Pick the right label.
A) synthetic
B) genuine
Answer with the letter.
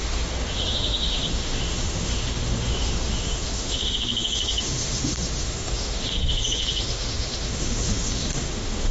A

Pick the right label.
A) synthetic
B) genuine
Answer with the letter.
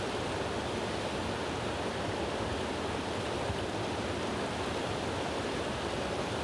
B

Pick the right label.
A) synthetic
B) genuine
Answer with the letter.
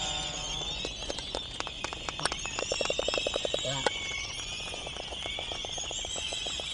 A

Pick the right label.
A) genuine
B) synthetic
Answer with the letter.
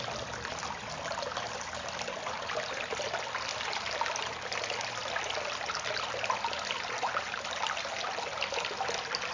A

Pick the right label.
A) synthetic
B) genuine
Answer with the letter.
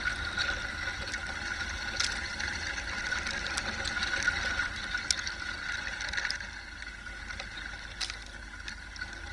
B